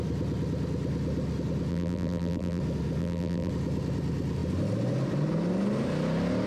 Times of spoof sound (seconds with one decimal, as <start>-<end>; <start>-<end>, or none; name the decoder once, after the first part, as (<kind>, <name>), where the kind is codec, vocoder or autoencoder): 1.7-2.6 (vocoder, BigVGAN v2); 3.0-3.5